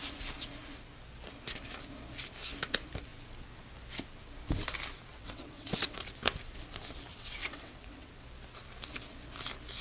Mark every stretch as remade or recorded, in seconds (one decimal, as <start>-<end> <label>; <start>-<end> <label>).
0.0-5.1 recorded; 5.1-6.0 remade; 6.0-7.1 recorded; 7.1-8.1 remade; 8.1-9.8 recorded